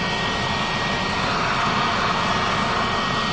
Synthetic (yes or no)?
no